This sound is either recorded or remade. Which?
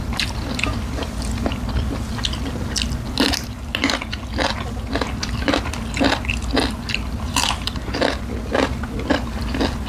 recorded